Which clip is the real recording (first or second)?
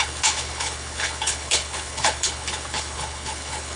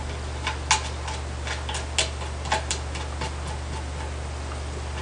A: second